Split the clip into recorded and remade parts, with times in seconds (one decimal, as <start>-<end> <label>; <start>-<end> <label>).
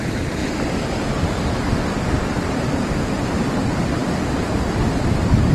0.0-0.4 remade; 0.4-3.0 recorded; 3.0-5.5 remade